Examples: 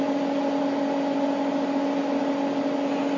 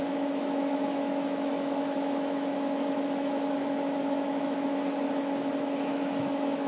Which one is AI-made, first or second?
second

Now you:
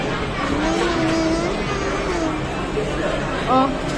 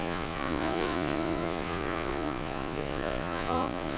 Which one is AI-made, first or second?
second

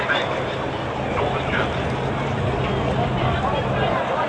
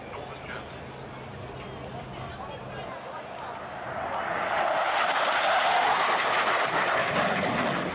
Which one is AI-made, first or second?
first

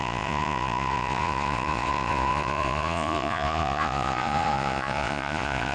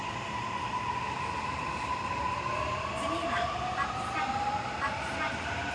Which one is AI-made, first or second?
first